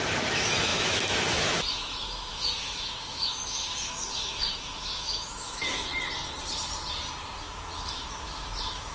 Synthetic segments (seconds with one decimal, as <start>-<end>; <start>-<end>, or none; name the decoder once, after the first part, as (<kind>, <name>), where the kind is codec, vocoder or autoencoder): 0.0-5.9 (autoencoder, DAC-VAE); 7.4-8.9